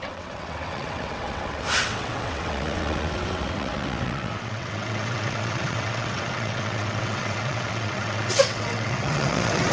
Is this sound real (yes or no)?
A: no